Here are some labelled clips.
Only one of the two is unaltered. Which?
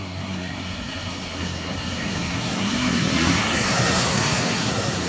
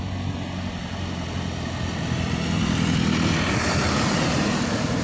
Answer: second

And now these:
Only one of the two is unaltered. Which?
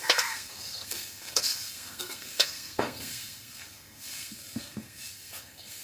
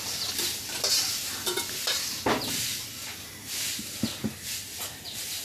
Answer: second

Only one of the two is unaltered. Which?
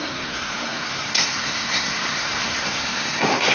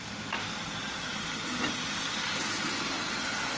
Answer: second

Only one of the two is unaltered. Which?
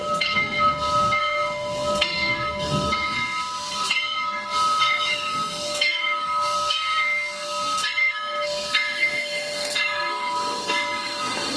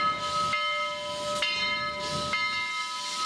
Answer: second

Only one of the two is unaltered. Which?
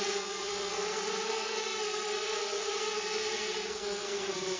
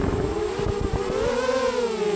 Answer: second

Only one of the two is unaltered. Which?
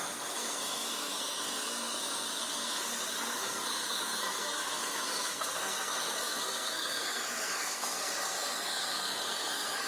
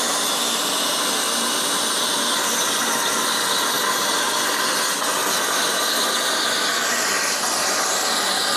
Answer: second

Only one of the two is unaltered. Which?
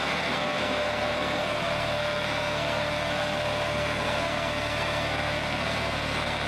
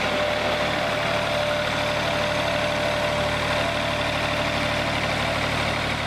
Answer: second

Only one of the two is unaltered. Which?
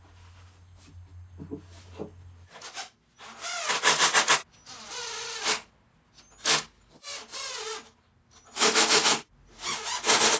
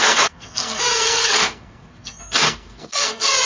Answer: first